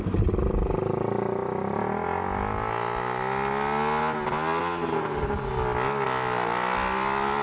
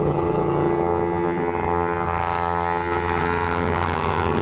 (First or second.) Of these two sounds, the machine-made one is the second